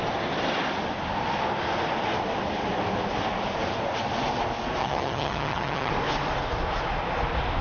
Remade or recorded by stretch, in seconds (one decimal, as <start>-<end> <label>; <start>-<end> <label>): 0.0-4.8 recorded; 4.8-5.9 remade; 5.9-7.6 recorded